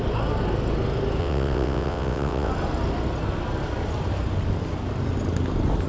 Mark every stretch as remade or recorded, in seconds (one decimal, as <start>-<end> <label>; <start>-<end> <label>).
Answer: 0.0-1.2 recorded; 1.2-2.5 remade; 2.5-5.9 recorded